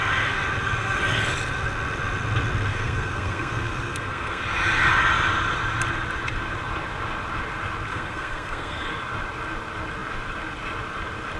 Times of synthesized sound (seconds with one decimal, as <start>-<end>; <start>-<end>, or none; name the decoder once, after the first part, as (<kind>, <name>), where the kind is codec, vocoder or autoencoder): 2.7-4.4 (codec, SNAC); 7.9-8.9